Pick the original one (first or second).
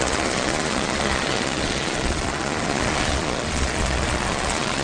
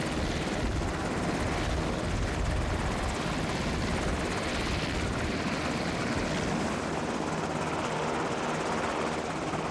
second